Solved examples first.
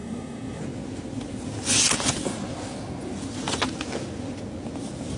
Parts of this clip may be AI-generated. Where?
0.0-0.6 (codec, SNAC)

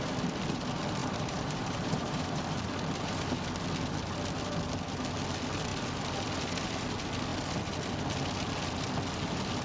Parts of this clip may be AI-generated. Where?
1.0-2.7 (vocoder, BigVGAN v2)

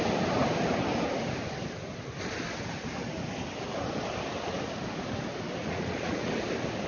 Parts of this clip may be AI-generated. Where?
5.6-6.3 (vocoder, Vocos)

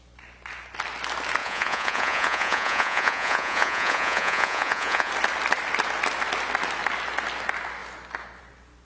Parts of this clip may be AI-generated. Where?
1.4-5.1 (vocoder, Vocos)